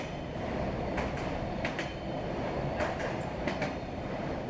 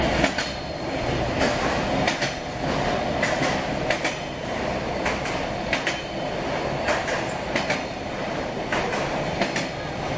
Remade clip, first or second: first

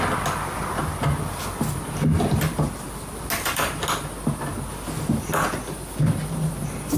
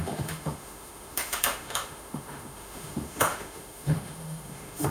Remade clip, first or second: second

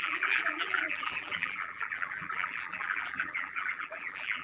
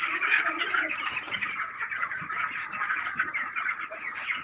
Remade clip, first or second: first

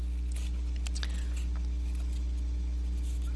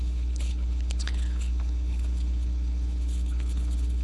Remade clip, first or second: second